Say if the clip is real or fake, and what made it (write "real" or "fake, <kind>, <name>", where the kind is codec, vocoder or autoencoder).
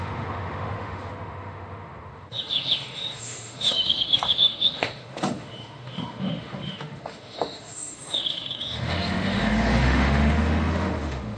fake, autoencoder, DAC-VAE